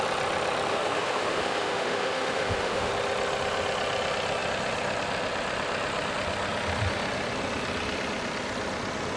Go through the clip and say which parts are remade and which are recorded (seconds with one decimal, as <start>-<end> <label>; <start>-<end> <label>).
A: 0.0-0.7 recorded; 0.7-2.9 remade; 2.9-9.2 recorded